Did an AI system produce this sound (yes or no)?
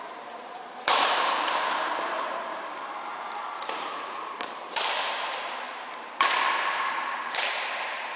yes